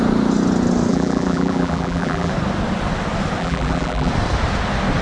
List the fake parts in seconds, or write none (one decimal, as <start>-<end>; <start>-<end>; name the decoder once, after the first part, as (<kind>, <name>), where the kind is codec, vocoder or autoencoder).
0.9-2.3 (vocoder, BigVGAN v2); 3.4-4.1